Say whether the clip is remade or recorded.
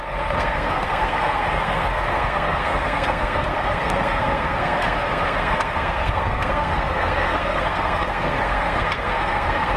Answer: remade